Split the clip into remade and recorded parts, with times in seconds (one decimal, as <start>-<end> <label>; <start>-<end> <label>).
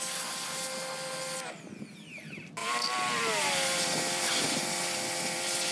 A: 0.0-2.6 recorded; 2.6-5.7 remade